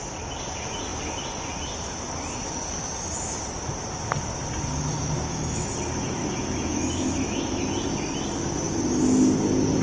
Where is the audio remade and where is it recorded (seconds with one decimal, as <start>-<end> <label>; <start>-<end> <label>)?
0.0-4.9 recorded; 4.9-5.7 remade; 5.7-6.2 recorded; 6.2-7.6 remade; 7.6-9.8 recorded

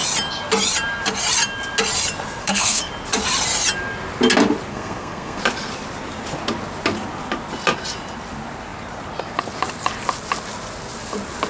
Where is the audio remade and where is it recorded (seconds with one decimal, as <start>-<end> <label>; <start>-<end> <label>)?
0.0-2.4 recorded; 2.4-2.9 remade; 2.9-4.7 recorded; 4.7-5.4 remade; 5.4-11.5 recorded

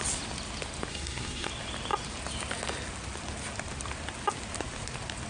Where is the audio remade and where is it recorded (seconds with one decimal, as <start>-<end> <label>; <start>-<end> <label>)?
0.0-0.9 recorded; 0.9-1.5 remade; 1.5-5.3 recorded